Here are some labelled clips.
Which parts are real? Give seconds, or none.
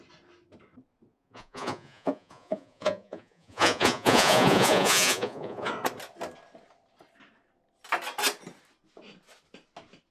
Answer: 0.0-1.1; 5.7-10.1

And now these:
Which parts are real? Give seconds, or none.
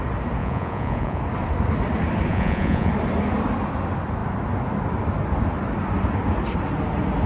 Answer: 0.0-0.4; 1.2-2.3; 2.9-7.3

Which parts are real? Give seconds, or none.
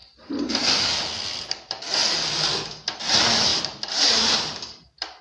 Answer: 0.7-3.5